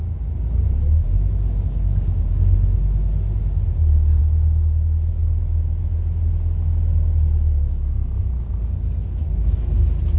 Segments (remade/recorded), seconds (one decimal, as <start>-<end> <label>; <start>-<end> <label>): 0.0-10.2 recorded